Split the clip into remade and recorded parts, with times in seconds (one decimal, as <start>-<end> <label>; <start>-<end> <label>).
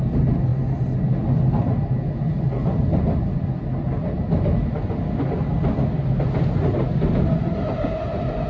0.0-8.5 recorded